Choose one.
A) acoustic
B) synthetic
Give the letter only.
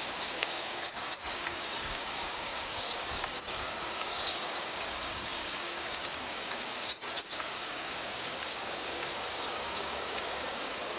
B